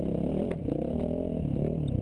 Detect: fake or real real